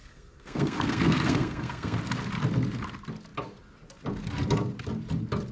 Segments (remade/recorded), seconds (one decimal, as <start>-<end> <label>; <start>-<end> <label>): 0.0-2.0 remade; 2.0-5.5 recorded

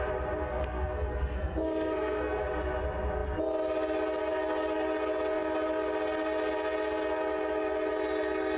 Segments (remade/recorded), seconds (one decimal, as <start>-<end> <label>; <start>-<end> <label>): 0.0-0.4 recorded; 0.4-2.4 remade; 2.4-8.6 recorded